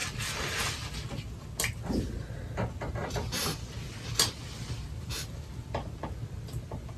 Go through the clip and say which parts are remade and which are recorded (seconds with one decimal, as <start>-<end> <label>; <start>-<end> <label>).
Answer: 0.0-7.0 recorded